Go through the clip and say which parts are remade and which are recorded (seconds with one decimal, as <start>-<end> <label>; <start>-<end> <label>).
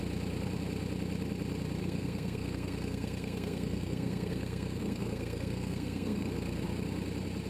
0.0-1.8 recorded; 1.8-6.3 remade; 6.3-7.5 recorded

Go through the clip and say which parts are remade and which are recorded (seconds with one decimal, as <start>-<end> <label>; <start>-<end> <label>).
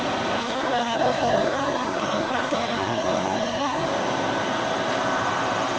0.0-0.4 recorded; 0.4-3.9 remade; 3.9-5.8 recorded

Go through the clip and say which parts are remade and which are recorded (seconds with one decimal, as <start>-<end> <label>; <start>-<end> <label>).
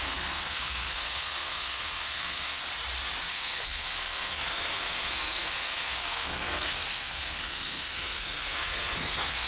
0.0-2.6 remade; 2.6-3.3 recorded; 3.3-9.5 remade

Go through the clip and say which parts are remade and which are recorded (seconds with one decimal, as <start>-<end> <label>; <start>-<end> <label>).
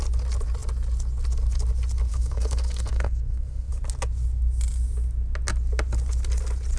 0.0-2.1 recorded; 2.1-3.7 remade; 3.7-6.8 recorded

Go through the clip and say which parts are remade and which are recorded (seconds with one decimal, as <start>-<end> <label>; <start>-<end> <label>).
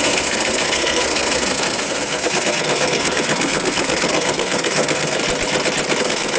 0.0-5.2 remade; 5.2-6.0 recorded; 6.0-6.4 remade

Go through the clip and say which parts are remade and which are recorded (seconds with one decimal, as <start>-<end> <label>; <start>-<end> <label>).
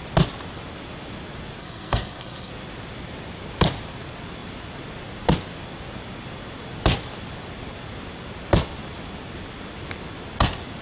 0.0-1.6 recorded; 1.6-2.5 remade; 2.5-10.8 recorded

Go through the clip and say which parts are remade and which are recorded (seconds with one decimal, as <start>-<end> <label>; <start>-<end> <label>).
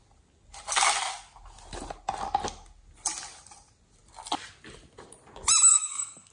0.0-5.7 recorded; 5.7-6.3 remade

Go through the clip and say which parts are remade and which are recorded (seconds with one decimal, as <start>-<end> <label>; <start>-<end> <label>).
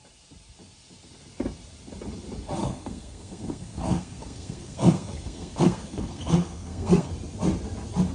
0.0-2.6 recorded; 2.6-7.1 remade; 7.1-8.1 recorded